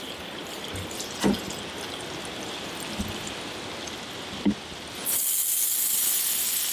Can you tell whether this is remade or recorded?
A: recorded